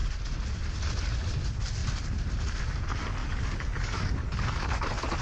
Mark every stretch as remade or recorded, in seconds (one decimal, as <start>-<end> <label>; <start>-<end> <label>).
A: 0.0-3.2 recorded; 3.2-4.8 remade; 4.8-5.2 recorded